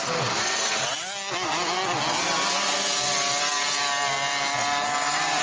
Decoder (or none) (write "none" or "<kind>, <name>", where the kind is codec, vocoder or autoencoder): none